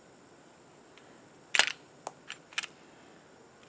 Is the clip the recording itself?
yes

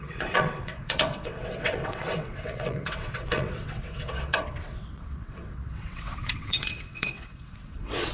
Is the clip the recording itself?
no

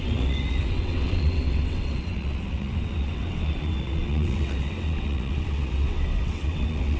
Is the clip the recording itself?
no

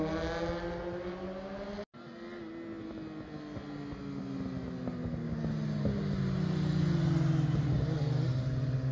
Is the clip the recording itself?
yes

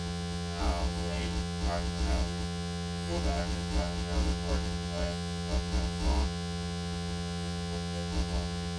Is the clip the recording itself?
no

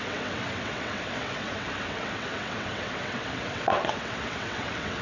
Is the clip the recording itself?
no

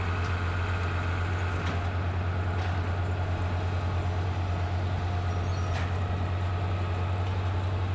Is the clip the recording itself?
yes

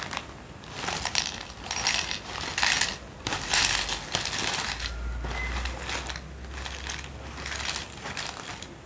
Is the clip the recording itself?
yes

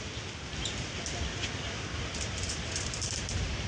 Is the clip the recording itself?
yes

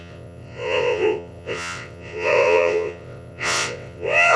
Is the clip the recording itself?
no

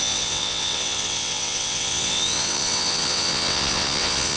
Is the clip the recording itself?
no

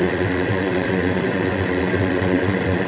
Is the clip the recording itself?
no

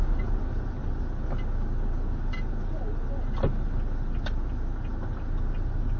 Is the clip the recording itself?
yes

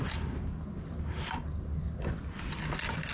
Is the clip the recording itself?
yes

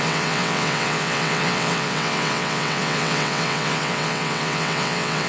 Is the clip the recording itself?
no